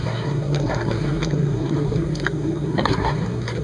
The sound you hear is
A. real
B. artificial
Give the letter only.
B